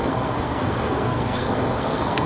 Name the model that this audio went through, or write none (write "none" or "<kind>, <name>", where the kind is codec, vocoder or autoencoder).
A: codec, SNAC